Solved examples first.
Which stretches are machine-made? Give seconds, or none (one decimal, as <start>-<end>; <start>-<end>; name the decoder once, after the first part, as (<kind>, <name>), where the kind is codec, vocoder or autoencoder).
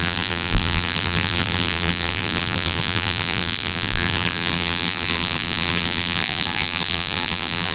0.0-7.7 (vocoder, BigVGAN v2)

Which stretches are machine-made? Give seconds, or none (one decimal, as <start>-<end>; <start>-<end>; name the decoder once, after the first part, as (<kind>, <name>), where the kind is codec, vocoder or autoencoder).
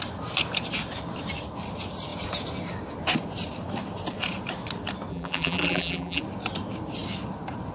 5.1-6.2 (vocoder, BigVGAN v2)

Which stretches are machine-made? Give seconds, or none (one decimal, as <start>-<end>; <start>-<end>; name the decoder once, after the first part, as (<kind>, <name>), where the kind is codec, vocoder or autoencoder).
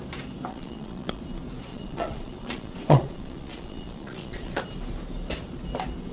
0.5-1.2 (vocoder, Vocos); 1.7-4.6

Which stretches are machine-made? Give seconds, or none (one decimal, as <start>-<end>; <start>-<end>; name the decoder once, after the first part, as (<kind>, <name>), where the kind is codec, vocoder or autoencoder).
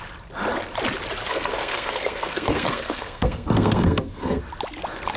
1.3-4.4 (codec, SNAC)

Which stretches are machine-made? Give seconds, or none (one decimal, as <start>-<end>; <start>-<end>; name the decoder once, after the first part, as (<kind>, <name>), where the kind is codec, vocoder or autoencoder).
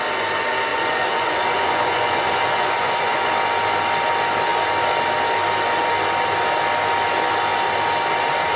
0.7-3.3 (vocoder, Vocos)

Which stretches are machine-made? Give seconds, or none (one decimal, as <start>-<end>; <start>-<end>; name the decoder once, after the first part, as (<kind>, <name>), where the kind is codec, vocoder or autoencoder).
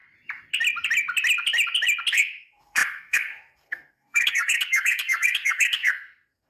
2.1-6.5 (codec, SNAC)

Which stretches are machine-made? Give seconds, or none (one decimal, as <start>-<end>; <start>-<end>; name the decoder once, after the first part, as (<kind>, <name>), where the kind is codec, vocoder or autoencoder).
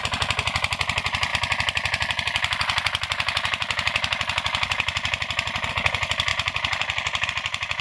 6.3-7.8 (vocoder, BigVGAN v2)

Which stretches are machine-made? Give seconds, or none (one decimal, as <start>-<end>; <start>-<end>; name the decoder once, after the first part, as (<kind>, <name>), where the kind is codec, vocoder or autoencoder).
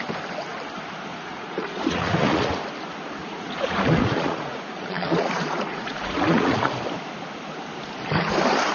1.1-2.6 (vocoder, Vocos); 3.2-6.7